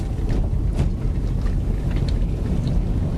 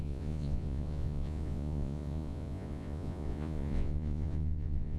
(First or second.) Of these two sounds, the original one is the first